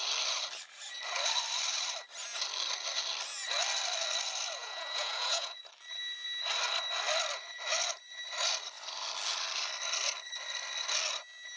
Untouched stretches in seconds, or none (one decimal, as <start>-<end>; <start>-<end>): 0.0-4.6; 5.6-11.6